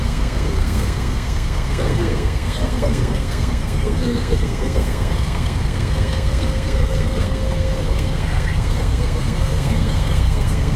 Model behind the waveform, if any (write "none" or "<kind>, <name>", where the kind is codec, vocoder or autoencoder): codec, SNAC